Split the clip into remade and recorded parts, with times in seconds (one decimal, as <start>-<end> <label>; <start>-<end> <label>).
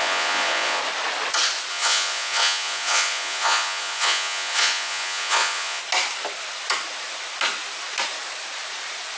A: 0.0-0.8 remade; 0.8-1.7 recorded; 1.7-5.8 remade; 5.8-9.2 recorded